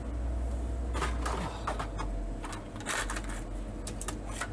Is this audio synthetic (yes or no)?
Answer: no